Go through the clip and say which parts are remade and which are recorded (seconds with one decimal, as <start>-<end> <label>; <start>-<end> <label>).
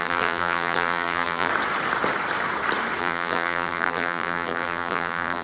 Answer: 0.0-1.5 remade; 1.5-3.0 recorded; 3.0-5.4 remade